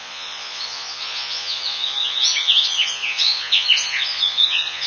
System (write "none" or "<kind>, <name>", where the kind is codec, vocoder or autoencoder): vocoder, Vocos